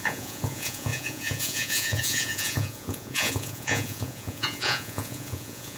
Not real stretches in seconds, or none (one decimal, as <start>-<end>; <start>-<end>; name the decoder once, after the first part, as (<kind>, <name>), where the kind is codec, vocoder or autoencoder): 0.0-5.8 (vocoder, Vocos)